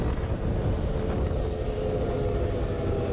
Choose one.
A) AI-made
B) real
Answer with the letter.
B